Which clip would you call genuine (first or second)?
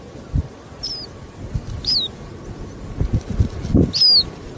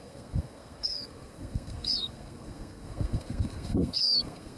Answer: first